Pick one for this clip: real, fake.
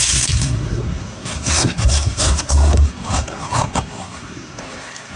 fake